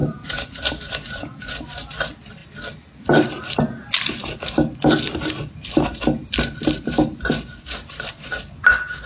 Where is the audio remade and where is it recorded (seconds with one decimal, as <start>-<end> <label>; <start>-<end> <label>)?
0.0-1.7 remade; 1.7-9.1 recorded